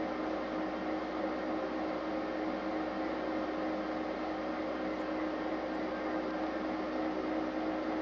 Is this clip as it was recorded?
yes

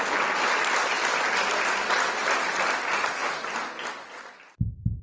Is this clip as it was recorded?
yes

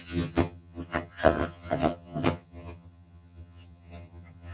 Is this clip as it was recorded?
no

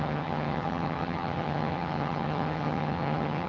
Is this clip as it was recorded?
no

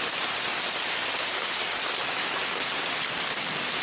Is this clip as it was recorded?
yes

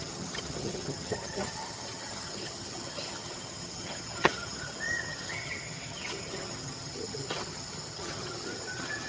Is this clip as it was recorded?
no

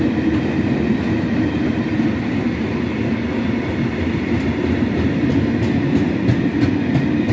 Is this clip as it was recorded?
yes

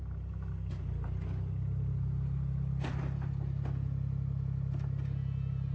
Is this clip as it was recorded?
yes